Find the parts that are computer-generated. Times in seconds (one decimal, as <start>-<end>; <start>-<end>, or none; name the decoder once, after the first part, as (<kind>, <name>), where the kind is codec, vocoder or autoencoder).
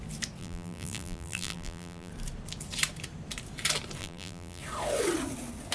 0.4-2.1 (vocoder, BigVGAN v2); 4.0-4.6